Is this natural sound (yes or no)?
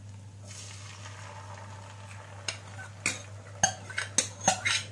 yes